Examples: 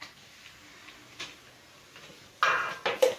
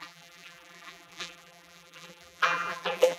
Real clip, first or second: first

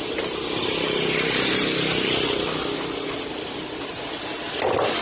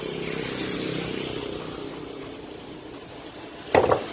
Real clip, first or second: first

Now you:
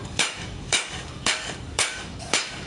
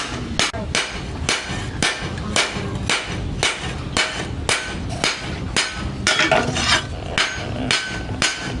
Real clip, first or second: second